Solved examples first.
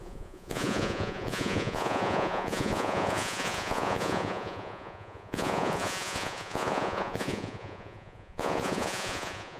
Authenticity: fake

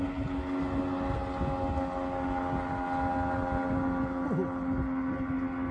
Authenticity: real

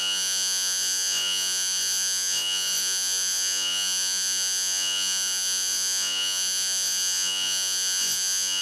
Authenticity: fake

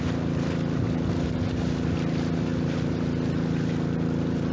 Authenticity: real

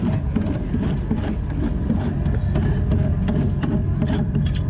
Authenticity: real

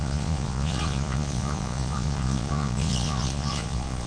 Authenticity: fake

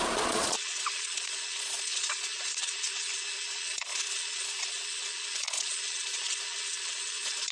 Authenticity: fake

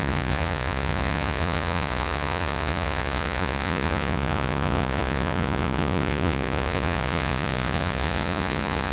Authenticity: fake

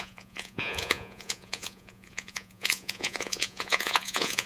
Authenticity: fake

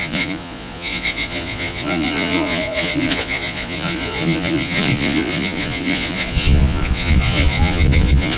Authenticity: fake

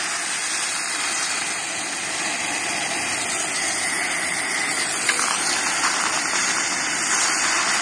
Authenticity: real